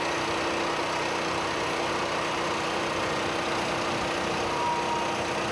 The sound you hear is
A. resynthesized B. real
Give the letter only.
B